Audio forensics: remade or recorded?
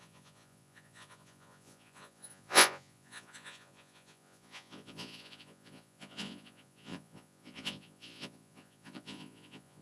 remade